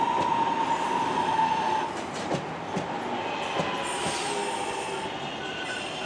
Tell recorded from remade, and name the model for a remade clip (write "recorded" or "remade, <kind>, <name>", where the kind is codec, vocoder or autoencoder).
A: recorded